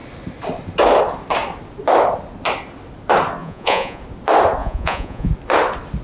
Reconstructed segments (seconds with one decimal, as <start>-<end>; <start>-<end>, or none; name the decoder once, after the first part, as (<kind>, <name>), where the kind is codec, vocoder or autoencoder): 3.4-4.0 (vocoder, Vocos); 4.6-5.3